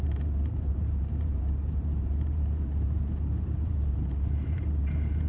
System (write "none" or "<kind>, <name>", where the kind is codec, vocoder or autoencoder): vocoder, BigVGAN v2